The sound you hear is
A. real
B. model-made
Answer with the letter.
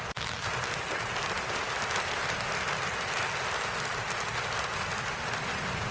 A